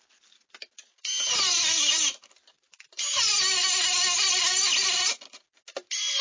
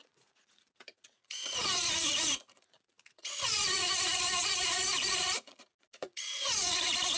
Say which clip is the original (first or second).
first